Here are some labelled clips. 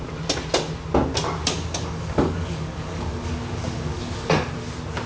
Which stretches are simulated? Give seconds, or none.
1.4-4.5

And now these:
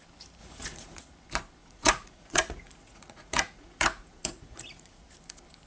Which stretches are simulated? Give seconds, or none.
0.4-1.0; 1.6-5.0

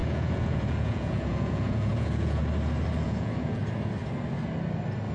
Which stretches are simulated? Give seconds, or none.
0.0-2.4; 3.0-3.6